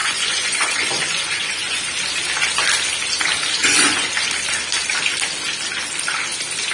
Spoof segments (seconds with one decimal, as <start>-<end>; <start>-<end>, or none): 0.0-1.8; 3.6-4.3